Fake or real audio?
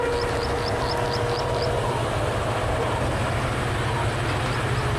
real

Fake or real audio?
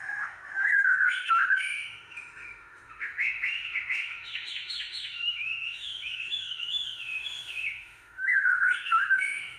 fake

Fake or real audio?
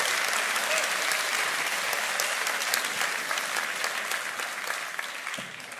real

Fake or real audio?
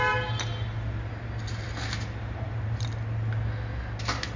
real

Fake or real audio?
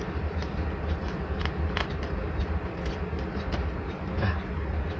real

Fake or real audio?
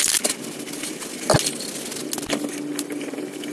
real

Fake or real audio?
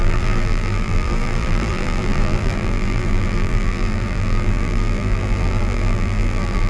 fake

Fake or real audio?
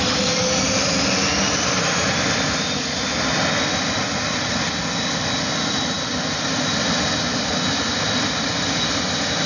real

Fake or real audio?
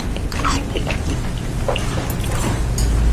real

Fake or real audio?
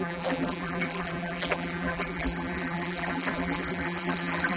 fake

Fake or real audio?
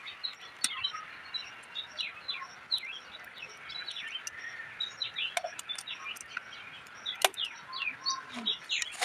real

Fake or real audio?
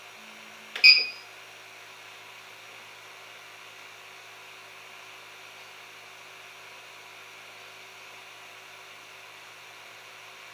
real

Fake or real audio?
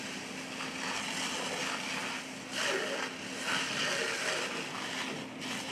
real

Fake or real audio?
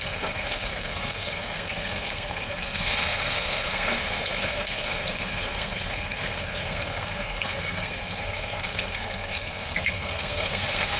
fake